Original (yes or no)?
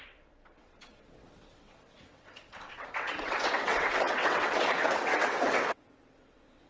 no